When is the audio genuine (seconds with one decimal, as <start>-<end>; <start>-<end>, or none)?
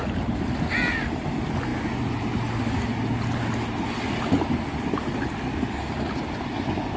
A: 0.0-7.0